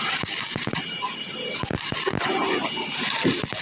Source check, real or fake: real